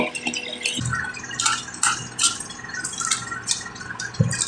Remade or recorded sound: recorded